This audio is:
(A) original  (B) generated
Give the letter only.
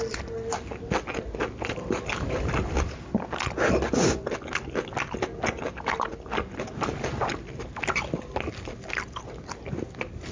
A